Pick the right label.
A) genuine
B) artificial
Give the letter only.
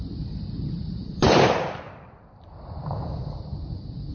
B